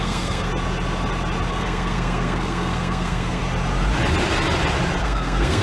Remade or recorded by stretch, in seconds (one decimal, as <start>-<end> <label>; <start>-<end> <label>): 0.0-0.5 remade; 0.5-1.5 recorded; 1.5-3.4 remade; 3.4-5.0 recorded; 5.0-5.6 remade